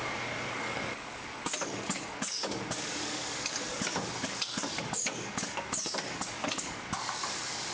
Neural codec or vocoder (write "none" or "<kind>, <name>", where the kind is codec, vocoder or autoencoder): codec, DAC